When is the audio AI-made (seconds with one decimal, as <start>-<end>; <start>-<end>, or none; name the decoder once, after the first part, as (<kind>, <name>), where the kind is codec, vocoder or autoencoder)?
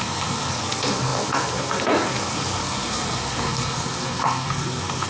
0.0-5.1 (codec, SNAC)